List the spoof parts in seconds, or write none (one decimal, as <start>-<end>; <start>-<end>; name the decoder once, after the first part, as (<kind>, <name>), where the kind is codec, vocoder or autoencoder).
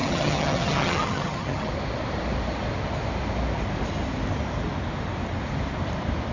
0.0-1.7 (vocoder, HiFi-GAN)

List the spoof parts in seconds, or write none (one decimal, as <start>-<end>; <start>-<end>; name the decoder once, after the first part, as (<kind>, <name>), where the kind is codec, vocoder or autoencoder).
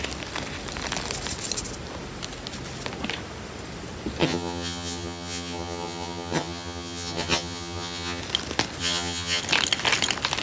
4.2-8.2 (vocoder, HiFi-GAN); 8.8-9.4